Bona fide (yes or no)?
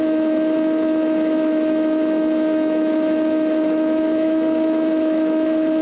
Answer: no